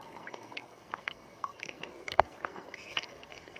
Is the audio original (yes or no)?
no